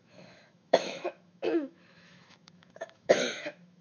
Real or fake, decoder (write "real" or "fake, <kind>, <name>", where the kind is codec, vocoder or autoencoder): fake, autoencoder, DAC-VAE